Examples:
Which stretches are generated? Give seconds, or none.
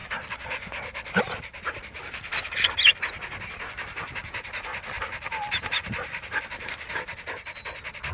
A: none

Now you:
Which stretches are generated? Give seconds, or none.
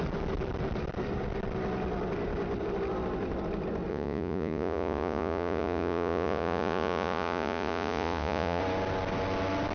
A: 3.9-8.6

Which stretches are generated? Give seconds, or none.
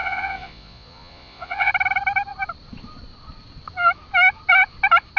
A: 0.0-1.7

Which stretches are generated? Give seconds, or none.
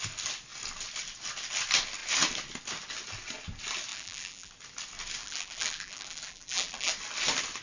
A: 3.9-4.5; 5.2-6.9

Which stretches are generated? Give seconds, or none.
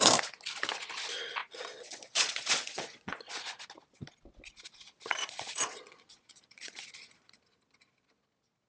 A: 1.4-3.3; 5.2-7.4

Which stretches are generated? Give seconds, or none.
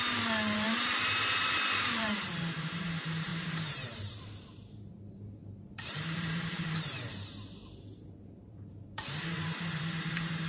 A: 0.0-10.5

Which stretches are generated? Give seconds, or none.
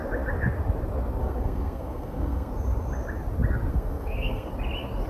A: 1.2-2.5; 3.7-4.5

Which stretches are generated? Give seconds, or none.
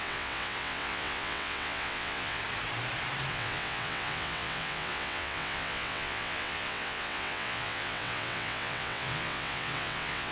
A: 0.0-2.4; 3.3-10.3